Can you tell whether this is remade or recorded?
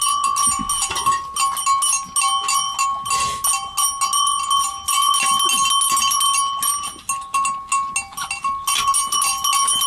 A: recorded